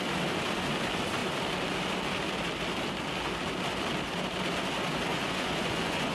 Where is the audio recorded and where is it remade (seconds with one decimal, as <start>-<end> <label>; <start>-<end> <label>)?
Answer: 0.0-5.1 recorded; 5.1-6.1 remade

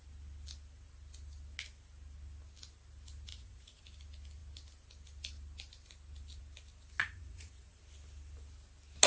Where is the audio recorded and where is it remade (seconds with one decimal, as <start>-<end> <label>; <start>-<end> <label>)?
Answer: 0.0-3.3 recorded; 3.3-3.8 remade; 3.8-7.0 recorded; 7.0-7.8 remade; 7.8-9.1 recorded

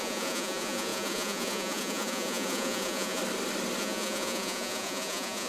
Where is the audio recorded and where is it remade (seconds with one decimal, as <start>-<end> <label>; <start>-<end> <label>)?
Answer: 0.0-3.2 remade; 3.2-3.8 recorded; 3.8-5.5 remade

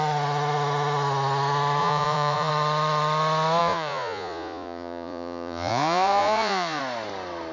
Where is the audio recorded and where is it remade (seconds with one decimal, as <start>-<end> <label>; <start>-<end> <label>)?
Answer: 0.0-1.8 recorded; 1.8-2.5 remade; 2.5-3.6 recorded; 3.6-6.8 remade; 6.8-7.5 recorded

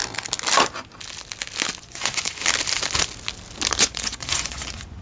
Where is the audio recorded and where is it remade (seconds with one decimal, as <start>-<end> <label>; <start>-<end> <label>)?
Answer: 0.0-1.8 recorded; 1.8-2.4 remade; 2.4-3.8 recorded; 3.8-5.0 remade

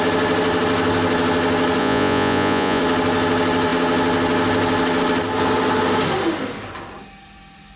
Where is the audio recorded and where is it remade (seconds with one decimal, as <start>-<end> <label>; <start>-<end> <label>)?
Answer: 0.0-1.8 recorded; 1.8-2.8 remade; 2.8-7.8 recorded

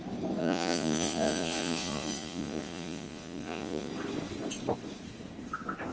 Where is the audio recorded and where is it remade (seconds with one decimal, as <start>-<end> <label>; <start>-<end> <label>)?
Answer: 0.0-0.4 recorded; 0.4-3.9 remade; 3.9-5.9 recorded